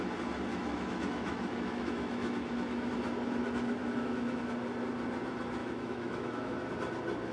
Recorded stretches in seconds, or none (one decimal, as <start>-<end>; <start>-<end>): 0.0-0.5; 2.9-3.8; 4.4-5.6; 6.6-7.3